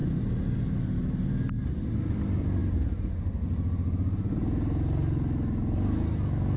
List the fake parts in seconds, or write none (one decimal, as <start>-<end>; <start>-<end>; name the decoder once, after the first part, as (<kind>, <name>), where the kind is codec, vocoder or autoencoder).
none